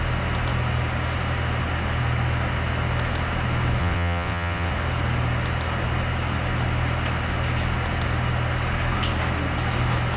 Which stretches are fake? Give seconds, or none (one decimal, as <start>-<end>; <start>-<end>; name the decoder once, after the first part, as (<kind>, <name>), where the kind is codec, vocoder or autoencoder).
3.8-4.7 (vocoder, WaveNeXt)